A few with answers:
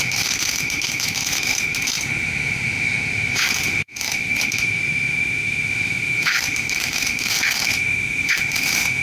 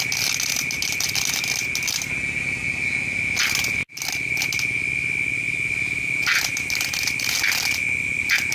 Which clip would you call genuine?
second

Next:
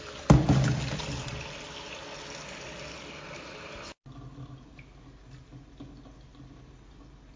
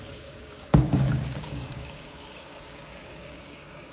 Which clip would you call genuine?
first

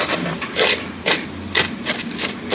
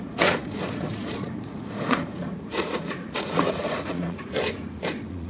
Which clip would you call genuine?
first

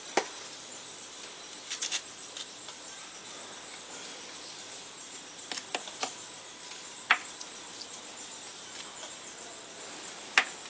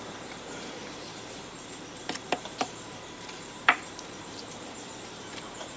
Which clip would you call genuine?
first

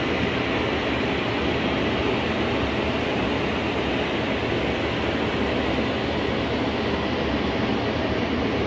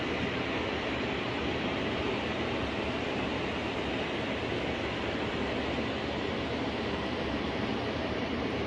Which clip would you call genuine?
first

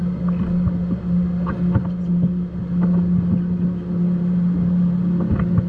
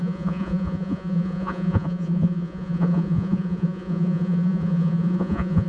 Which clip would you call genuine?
first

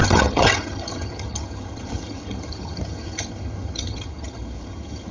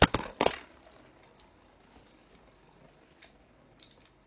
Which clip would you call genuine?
second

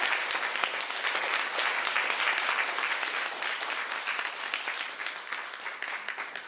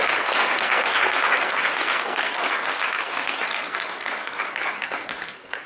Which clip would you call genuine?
first